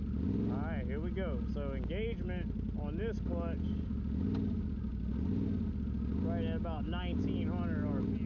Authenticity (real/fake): real